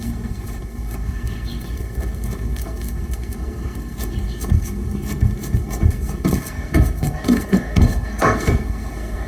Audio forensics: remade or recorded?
remade